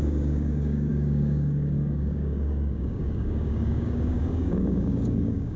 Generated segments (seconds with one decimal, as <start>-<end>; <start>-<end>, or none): 0.0-5.6